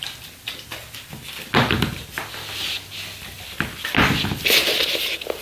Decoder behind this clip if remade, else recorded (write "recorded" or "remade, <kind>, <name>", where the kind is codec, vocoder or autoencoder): recorded